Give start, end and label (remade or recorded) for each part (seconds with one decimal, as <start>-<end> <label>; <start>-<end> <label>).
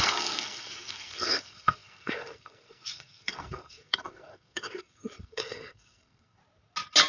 0.0-6.4 remade; 6.4-7.1 recorded